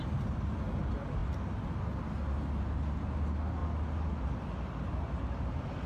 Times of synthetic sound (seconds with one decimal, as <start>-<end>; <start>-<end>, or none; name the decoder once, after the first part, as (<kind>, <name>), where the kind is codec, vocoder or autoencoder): none